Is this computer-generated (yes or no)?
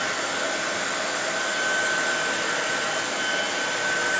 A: no